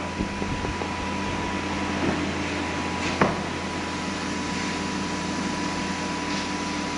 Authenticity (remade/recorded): recorded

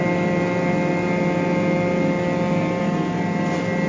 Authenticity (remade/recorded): recorded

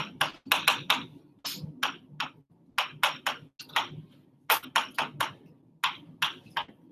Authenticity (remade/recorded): recorded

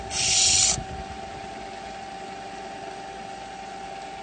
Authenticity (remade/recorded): recorded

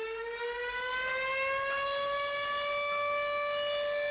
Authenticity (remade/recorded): recorded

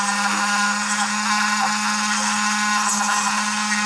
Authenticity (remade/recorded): recorded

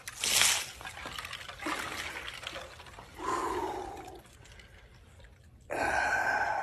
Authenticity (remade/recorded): recorded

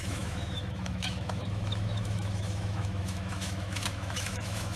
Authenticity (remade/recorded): remade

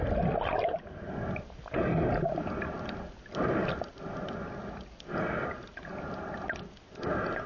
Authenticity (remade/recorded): recorded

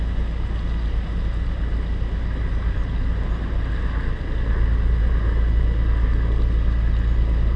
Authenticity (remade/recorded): recorded